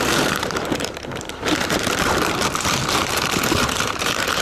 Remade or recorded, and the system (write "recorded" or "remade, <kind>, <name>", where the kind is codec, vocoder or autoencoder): remade, vocoder, BigVGAN v2